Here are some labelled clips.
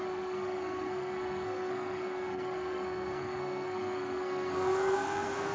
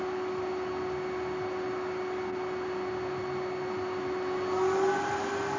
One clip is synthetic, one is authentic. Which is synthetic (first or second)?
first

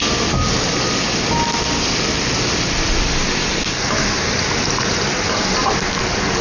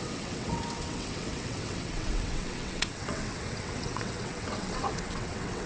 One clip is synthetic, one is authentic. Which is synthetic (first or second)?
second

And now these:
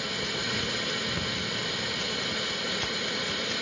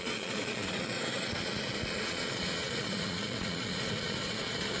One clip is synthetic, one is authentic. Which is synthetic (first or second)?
second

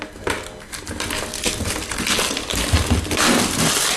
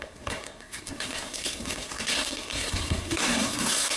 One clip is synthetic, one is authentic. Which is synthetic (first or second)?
second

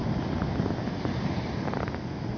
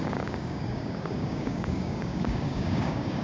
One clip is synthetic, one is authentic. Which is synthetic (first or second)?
second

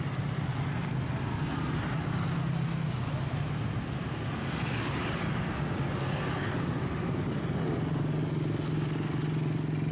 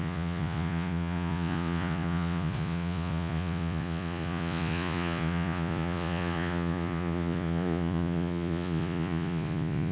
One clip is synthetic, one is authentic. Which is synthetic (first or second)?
second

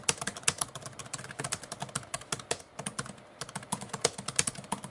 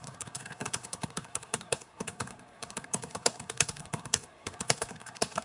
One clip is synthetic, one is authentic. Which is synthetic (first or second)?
second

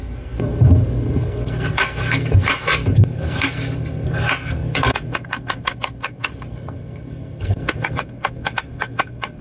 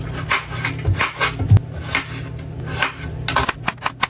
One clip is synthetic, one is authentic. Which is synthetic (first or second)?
first